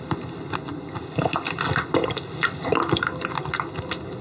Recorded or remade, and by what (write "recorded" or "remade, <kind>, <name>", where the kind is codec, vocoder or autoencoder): recorded